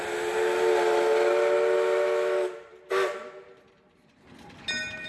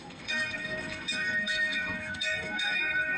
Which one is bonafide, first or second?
first